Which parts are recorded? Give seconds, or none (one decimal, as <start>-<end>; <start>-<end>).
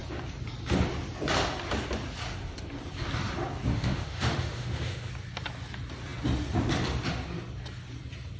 0.0-3.7; 5.1-8.4